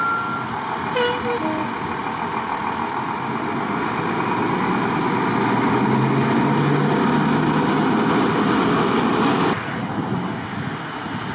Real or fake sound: real